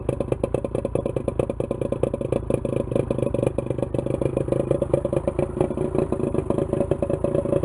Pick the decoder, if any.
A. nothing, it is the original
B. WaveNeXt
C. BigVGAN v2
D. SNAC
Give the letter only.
A